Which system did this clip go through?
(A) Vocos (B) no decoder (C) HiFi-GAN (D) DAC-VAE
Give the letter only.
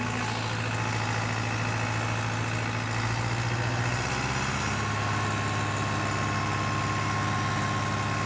B